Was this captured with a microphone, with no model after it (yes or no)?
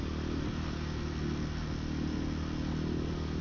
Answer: yes